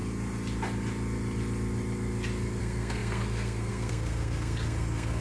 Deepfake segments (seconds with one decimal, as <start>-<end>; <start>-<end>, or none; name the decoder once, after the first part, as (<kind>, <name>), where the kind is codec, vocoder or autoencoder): 2.6-5.2 (codec, SNAC)